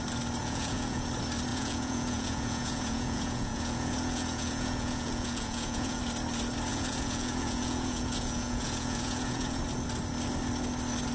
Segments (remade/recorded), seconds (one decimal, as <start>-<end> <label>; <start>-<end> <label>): 0.0-0.4 recorded; 0.4-1.1 remade; 1.1-1.5 recorded; 1.5-6.0 remade; 6.0-6.7 recorded; 6.7-9.6 remade; 9.6-11.1 recorded

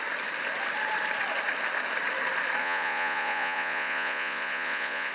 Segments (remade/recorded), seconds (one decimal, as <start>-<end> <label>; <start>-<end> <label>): 0.0-2.6 recorded; 2.6-5.1 remade

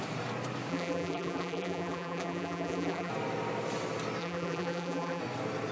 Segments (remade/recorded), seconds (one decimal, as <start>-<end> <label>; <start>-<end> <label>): 0.0-0.7 recorded; 0.7-3.1 remade; 3.1-4.2 recorded; 4.2-5.2 remade; 5.2-5.7 recorded

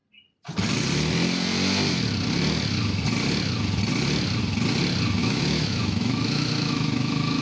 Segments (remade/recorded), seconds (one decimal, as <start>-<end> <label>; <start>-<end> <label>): 0.0-5.2 recorded; 5.2-7.4 remade

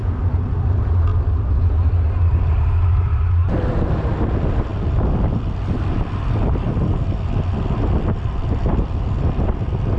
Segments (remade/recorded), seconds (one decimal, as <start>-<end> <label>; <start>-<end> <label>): 0.0-10.0 recorded